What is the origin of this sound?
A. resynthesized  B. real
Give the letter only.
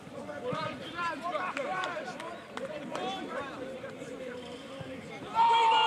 A